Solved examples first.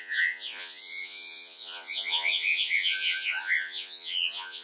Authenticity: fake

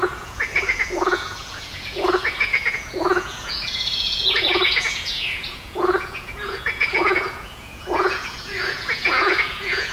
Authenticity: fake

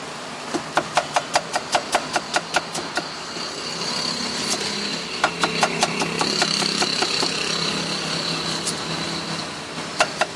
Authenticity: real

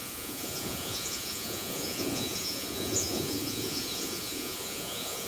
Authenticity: fake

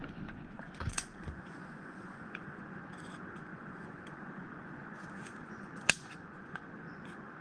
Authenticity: fake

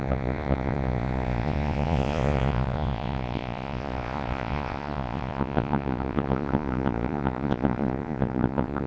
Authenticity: fake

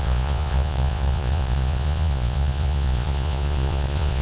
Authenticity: fake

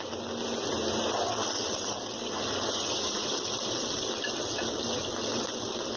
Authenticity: real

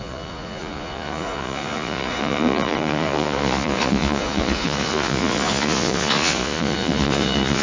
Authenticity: fake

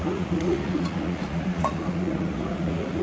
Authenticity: fake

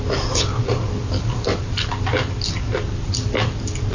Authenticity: real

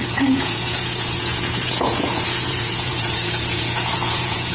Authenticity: fake